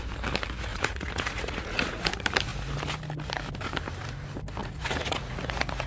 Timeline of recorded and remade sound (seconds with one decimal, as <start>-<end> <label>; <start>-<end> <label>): 0.0-0.7 recorded; 0.7-2.1 remade; 2.1-4.6 recorded; 4.6-5.9 remade